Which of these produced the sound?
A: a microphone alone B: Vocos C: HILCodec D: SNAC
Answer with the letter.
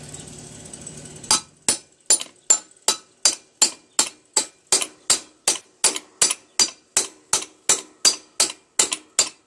A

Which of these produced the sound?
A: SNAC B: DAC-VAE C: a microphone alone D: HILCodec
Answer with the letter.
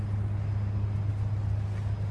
C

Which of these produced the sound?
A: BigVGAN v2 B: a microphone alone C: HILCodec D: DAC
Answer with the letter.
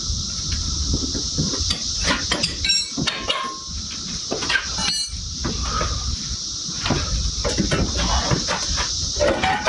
B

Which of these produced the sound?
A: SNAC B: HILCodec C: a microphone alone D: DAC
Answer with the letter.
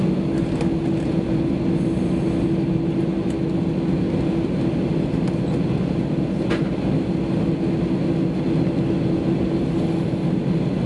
C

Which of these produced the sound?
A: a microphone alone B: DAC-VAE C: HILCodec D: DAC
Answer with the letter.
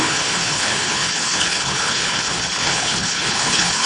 C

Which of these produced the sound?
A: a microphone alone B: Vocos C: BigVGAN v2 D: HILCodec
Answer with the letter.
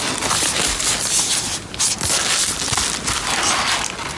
A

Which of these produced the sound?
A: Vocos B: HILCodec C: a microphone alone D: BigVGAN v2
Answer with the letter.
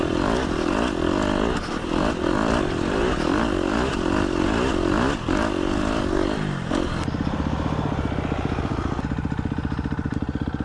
C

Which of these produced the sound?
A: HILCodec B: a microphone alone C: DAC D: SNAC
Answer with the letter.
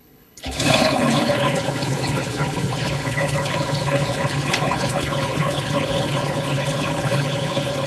A